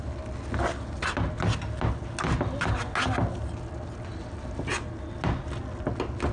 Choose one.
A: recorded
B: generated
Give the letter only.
A